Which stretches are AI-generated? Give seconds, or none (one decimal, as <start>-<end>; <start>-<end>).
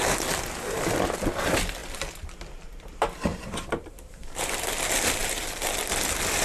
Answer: 3.3-4.6; 5.2-5.8